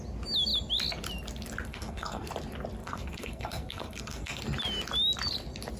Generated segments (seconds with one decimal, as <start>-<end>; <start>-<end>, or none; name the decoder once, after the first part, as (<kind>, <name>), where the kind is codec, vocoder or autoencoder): 1.7-2.3 (codec, SNAC); 2.8-4.4